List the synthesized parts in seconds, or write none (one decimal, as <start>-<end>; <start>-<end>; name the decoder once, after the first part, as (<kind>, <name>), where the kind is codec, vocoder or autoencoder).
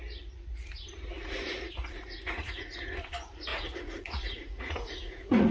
1.1-2.9 (vocoder, Vocos); 3.5-5.5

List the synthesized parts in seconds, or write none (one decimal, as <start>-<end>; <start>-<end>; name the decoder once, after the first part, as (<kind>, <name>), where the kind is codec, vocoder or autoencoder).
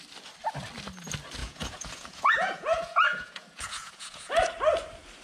1.4-4.3 (vocoder, Vocos)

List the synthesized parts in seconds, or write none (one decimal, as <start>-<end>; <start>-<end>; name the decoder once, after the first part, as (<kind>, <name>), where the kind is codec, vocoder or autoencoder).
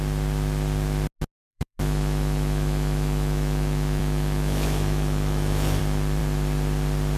1.5-5.8 (autoencoder, DAC-VAE)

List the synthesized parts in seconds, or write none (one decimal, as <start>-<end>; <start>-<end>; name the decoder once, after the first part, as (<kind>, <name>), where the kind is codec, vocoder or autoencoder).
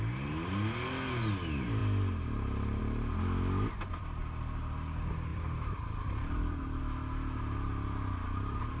5.3-6.8 (vocoder, BigVGAN v2)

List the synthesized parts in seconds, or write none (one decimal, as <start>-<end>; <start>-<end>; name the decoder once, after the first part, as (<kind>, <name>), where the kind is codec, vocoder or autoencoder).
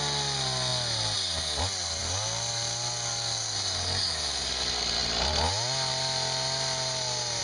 none